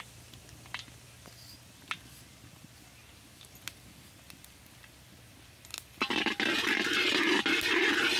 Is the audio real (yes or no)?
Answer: yes